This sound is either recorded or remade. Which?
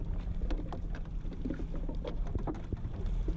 recorded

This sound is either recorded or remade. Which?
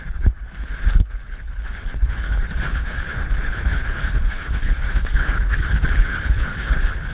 remade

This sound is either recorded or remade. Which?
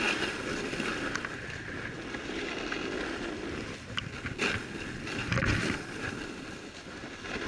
recorded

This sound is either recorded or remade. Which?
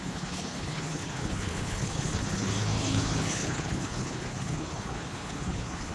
remade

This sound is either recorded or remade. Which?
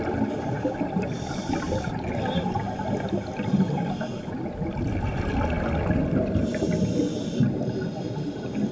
recorded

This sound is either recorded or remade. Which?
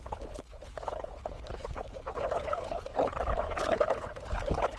remade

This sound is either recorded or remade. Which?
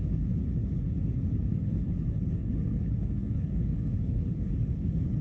remade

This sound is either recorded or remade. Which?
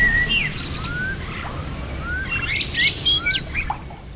recorded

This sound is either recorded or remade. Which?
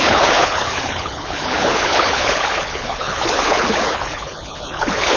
remade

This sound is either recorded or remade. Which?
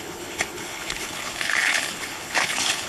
remade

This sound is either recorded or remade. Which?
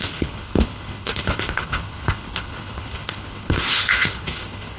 remade